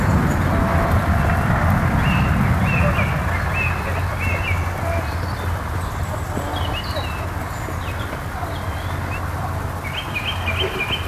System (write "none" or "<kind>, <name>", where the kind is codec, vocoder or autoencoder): none